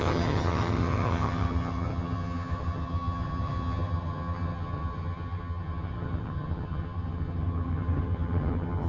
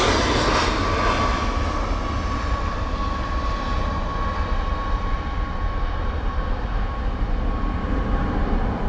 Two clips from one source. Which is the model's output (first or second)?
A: first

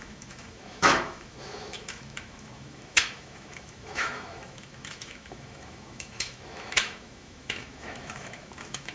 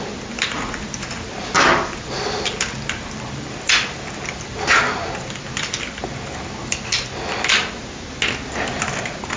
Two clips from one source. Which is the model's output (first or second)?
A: first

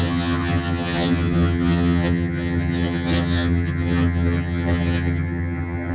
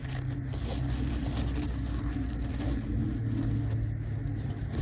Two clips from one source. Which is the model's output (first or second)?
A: first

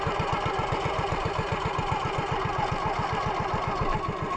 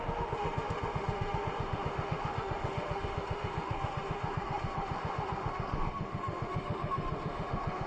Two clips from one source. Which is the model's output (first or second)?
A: second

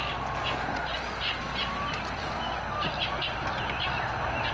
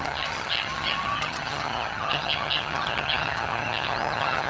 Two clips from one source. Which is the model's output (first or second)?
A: second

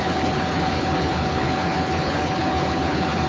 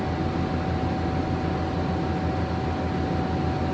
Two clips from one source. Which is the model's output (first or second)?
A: first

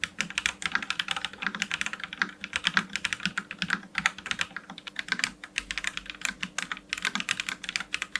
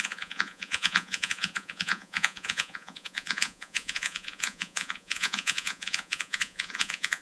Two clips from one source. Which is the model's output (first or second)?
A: second